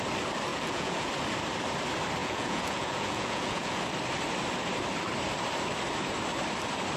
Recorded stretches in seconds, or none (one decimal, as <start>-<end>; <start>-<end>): 0.0-0.5; 1.1-2.2; 3.8-7.0